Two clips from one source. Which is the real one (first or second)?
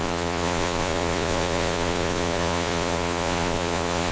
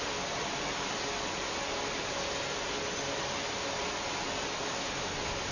second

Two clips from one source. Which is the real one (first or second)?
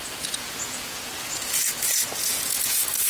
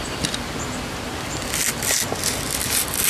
second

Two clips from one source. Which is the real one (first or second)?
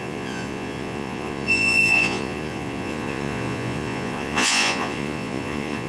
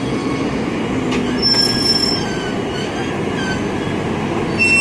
second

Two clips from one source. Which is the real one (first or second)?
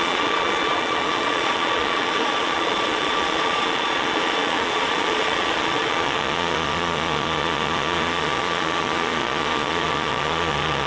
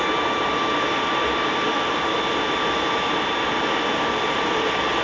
second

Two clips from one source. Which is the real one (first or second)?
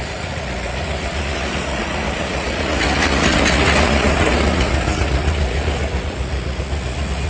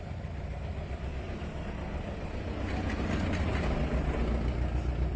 second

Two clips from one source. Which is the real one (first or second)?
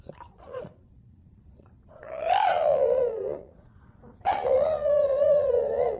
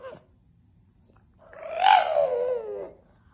second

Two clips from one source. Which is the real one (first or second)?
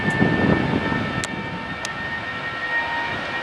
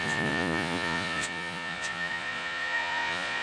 first